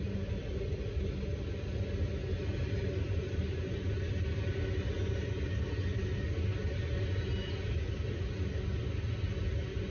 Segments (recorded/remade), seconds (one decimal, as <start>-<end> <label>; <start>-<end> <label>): 0.0-9.9 recorded